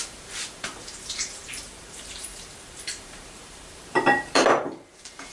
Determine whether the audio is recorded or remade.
remade